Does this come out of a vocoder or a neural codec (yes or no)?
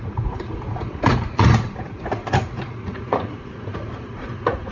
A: yes